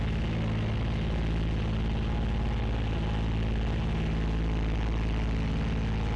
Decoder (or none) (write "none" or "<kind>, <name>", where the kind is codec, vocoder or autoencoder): none